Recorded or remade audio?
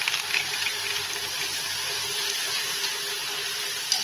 recorded